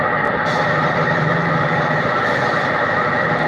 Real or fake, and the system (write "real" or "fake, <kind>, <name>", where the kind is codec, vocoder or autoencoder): real